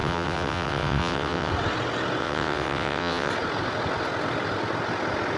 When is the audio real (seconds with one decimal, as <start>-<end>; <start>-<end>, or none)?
1.5-2.2; 3.3-5.4